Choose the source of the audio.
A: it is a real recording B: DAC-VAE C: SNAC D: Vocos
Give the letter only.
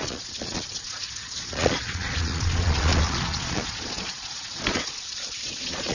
D